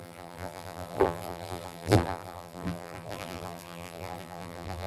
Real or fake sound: fake